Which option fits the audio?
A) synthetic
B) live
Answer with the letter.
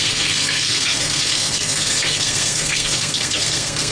A